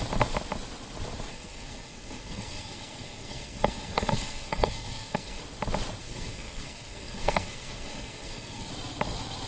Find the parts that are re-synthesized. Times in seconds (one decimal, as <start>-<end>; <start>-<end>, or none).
1.3-5.4; 6.0-8.7